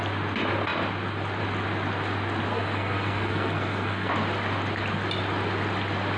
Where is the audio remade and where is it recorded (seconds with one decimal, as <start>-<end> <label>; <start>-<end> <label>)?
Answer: 0.0-2.5 recorded; 2.5-4.1 remade; 4.1-6.2 recorded